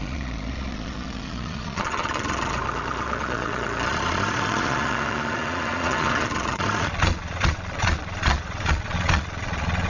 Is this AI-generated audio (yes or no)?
yes